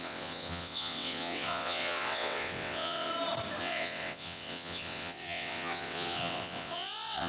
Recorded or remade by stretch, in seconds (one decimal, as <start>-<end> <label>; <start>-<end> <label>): 0.0-3.1 remade; 3.1-3.6 recorded; 3.6-7.3 remade